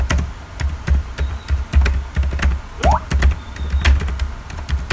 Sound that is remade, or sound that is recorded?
recorded